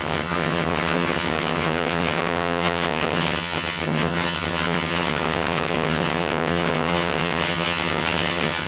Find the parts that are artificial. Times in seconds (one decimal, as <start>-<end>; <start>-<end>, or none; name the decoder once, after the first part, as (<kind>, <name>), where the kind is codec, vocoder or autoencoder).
0.0-8.7 (vocoder, HiFi-GAN)